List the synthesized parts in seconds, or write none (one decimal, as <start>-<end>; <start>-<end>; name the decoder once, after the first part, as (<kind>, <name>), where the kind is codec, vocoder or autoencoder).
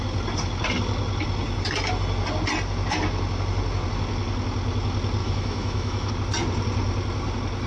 5.2-6.1 (autoencoder, DAC-VAE)